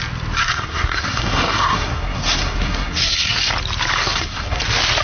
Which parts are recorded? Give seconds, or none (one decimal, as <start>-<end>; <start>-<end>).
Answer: 0.0-0.4; 3.4-4.0; 4.6-5.0